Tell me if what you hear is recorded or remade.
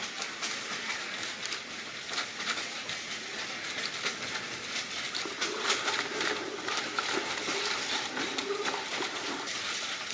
recorded